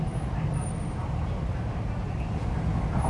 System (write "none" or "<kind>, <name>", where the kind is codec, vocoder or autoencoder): none